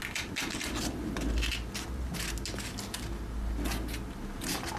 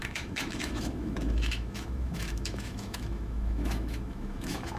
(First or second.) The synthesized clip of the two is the second